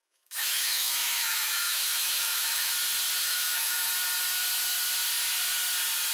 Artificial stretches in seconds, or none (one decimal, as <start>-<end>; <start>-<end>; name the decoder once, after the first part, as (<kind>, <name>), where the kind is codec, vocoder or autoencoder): 0.0-2.7 (autoencoder, DAC-VAE); 3.2-3.9